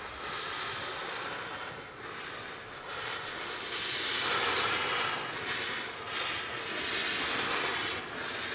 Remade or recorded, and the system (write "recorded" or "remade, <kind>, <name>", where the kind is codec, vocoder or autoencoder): recorded